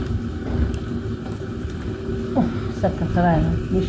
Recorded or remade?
recorded